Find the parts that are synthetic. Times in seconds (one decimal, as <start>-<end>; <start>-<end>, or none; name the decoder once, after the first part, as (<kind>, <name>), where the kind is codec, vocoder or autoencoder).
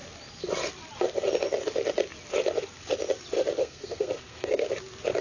3.6-4.7 (codec, SNAC)